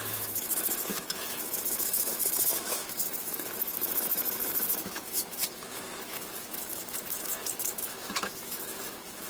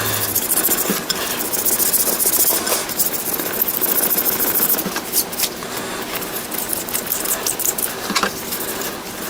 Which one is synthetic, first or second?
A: first